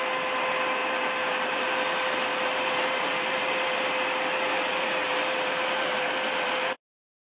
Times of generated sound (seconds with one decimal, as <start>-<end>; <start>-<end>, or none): 0.8-1.6; 2.3-6.7